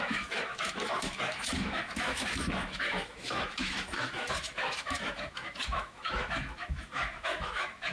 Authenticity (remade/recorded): remade